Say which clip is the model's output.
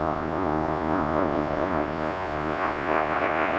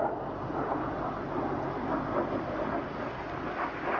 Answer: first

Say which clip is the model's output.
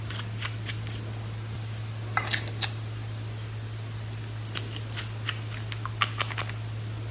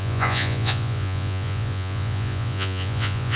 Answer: second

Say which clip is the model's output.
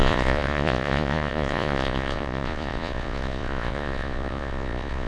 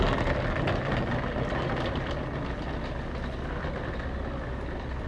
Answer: first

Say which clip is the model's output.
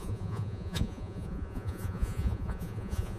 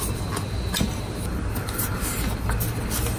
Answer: first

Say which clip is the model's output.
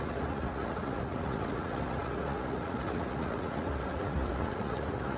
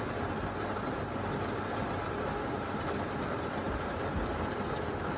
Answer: first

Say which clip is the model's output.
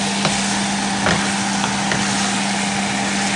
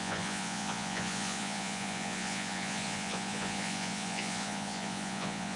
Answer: second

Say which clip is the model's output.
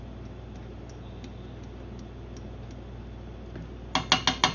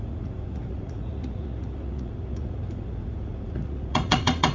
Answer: second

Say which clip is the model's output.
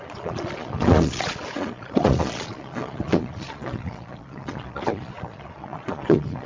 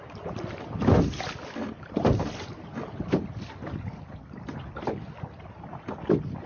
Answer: first